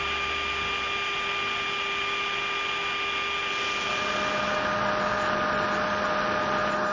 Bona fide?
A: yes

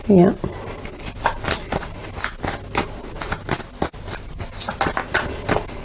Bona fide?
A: yes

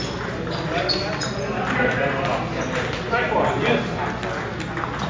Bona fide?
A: yes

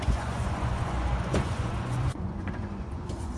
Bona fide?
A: no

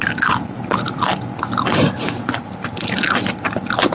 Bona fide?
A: yes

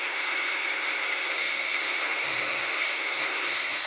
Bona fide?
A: no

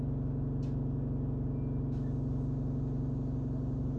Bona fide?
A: yes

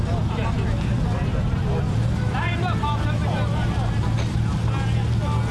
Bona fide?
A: yes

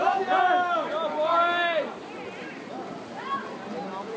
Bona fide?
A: yes